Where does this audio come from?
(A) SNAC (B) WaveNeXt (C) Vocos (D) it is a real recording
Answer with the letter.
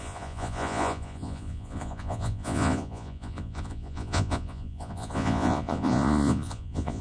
C